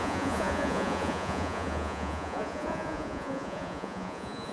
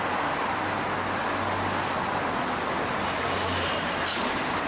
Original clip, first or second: second